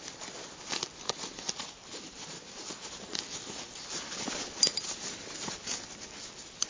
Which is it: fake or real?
real